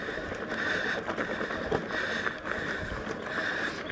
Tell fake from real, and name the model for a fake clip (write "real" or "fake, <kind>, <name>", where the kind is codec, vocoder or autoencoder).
real